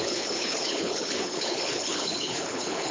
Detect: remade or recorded remade